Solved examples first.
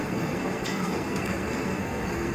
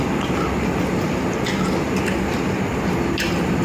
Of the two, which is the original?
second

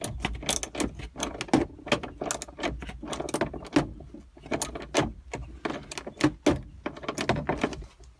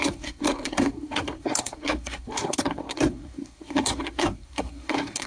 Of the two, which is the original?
first